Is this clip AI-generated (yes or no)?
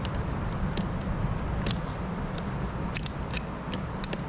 no